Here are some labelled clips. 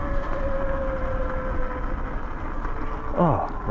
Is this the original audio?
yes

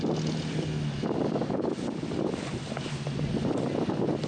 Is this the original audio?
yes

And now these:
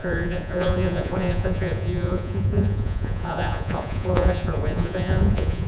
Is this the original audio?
no